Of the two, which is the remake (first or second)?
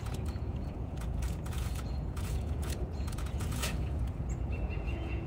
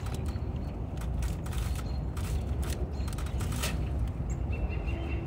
first